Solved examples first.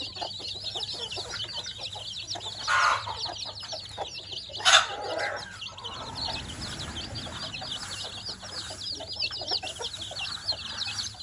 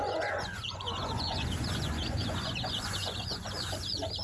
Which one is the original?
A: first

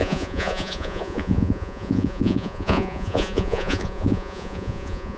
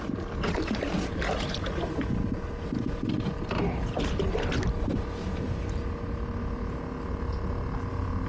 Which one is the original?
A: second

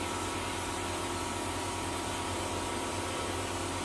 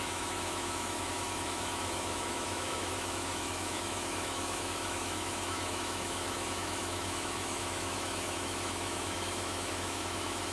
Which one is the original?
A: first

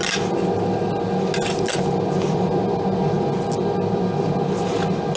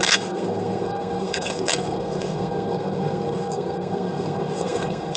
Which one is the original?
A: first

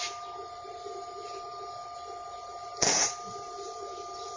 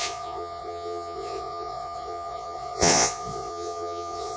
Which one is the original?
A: first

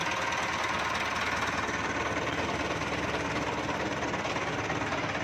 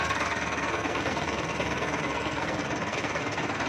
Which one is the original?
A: first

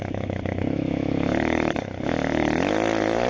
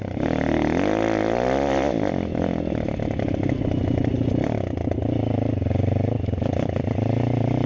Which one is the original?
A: second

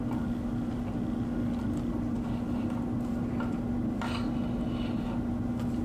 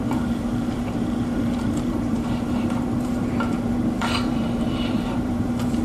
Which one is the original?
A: first